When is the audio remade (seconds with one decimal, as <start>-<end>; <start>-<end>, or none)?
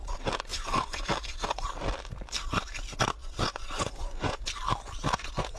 0.5-1.0; 3.2-4.4